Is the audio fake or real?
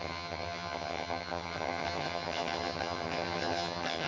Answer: fake